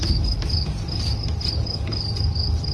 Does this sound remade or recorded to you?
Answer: recorded